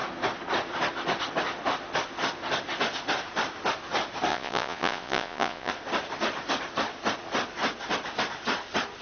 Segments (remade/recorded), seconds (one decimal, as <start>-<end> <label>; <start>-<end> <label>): 0.0-4.3 recorded; 4.3-5.7 remade; 5.7-9.0 recorded

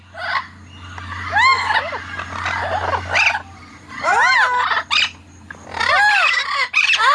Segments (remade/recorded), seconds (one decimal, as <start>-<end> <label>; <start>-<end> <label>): 0.0-7.1 recorded

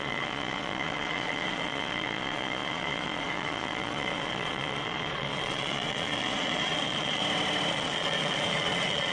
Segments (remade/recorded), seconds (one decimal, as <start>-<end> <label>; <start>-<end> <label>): 0.0-7.2 remade; 7.2-7.7 recorded; 7.7-9.1 remade

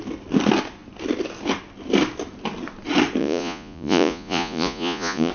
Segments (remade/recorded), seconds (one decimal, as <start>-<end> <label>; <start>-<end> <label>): 0.0-3.2 recorded; 3.2-5.3 remade

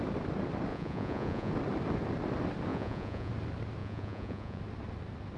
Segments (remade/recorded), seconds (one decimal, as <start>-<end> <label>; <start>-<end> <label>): 0.0-0.7 recorded; 0.7-1.5 remade; 1.5-2.7 recorded; 2.7-3.3 remade; 3.3-3.8 recorded; 3.8-4.6 remade; 4.6-5.4 recorded

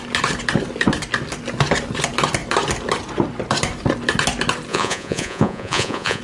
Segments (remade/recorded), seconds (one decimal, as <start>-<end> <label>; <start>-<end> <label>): 0.0-4.7 recorded; 4.7-6.2 remade